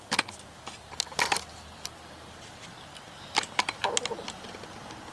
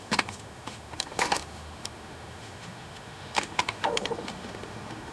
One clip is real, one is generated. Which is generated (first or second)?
second